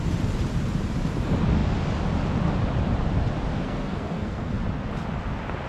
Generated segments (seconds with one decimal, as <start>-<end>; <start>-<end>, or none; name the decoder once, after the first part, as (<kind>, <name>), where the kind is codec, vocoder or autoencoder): 3.5-4.6 (codec, SNAC)